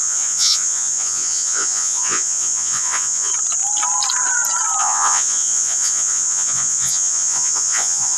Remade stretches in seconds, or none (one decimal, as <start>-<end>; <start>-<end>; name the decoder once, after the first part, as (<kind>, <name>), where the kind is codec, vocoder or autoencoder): 0.0-3.3 (vocoder, Vocos); 4.8-8.2